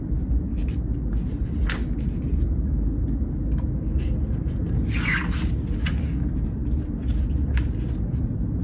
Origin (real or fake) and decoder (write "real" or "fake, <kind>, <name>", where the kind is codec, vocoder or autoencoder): real